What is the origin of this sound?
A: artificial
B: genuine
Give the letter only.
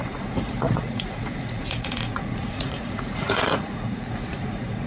A